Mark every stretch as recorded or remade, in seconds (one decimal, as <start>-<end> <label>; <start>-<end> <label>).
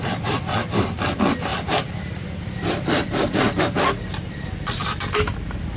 0.0-0.6 recorded; 0.6-1.1 remade; 1.1-1.5 recorded; 1.5-3.6 remade; 3.6-5.8 recorded